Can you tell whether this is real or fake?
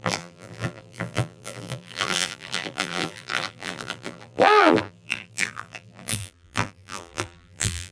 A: fake